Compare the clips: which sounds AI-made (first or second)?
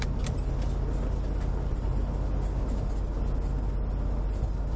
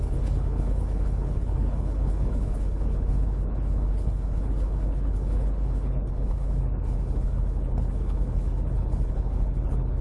second